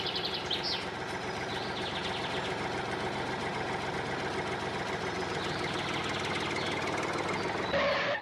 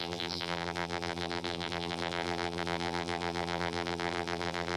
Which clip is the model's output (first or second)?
second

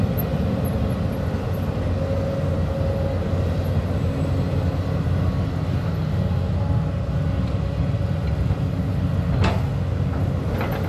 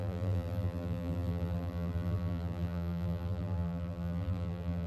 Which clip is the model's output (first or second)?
second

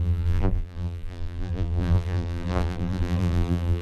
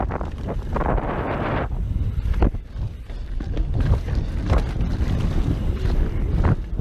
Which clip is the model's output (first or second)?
first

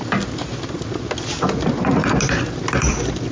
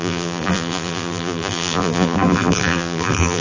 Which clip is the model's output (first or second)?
second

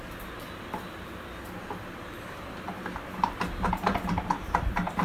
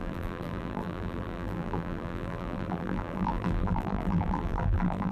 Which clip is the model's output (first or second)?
second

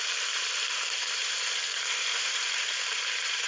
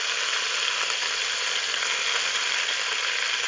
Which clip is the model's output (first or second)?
first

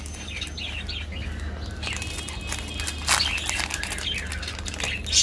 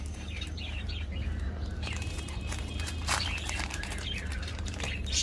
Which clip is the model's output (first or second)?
second